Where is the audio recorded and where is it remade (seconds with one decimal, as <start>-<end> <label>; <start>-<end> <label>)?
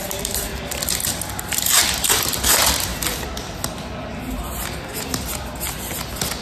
0.0-0.5 remade; 0.5-1.4 recorded; 1.4-2.9 remade; 2.9-6.4 recorded